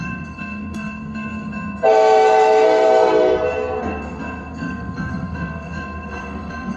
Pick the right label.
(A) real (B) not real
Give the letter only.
B